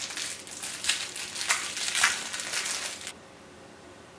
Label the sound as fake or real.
real